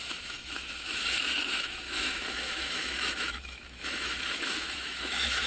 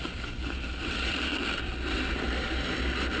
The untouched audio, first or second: second